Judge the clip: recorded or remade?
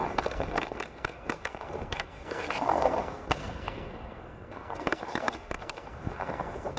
remade